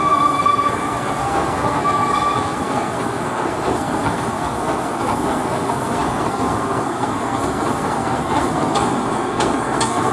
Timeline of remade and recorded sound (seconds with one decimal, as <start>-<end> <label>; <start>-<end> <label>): 0.0-10.1 remade